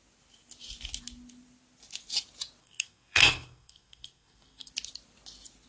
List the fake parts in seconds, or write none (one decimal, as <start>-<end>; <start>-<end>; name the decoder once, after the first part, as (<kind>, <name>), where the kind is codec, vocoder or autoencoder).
2.6-4.7 (codec, SNAC)